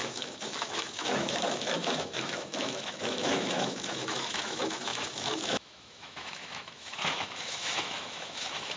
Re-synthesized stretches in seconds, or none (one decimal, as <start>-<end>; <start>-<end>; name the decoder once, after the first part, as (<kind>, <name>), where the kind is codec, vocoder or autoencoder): 0.0-8.8 (autoencoder, DAC-VAE)